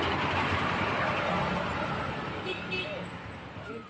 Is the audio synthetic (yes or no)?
no